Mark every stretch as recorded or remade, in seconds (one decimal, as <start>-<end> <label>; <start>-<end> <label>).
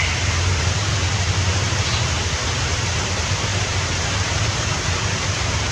0.0-5.7 remade